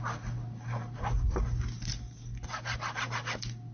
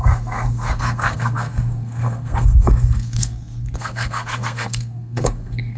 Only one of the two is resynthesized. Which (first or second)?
second